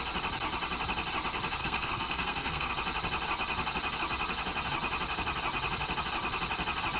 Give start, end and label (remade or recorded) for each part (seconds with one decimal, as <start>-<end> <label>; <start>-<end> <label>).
0.0-1.6 recorded; 1.6-2.7 remade; 2.7-7.0 recorded